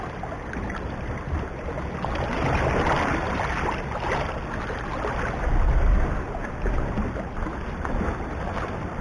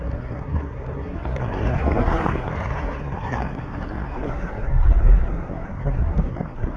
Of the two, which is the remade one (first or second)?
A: second